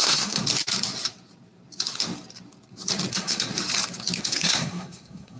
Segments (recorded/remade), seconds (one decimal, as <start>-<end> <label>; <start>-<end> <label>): 0.0-0.4 remade; 0.4-3.1 recorded; 3.1-3.5 remade; 3.5-4.2 recorded; 4.2-5.4 remade